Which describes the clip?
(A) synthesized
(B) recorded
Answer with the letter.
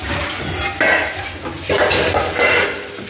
B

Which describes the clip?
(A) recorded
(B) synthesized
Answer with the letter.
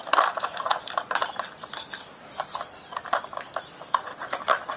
A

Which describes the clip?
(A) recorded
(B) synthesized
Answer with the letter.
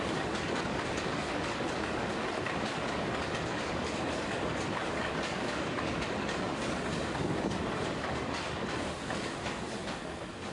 B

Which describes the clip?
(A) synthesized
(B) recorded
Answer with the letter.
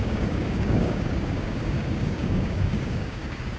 A